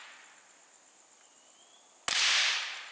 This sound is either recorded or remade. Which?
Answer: recorded